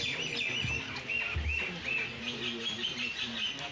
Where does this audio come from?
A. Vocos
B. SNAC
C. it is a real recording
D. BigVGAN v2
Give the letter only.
C